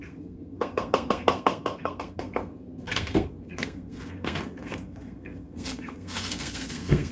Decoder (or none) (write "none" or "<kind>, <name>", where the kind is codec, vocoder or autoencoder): codec, SNAC